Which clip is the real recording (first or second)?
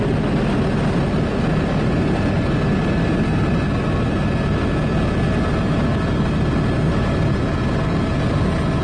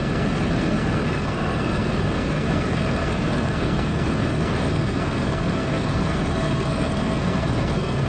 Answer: first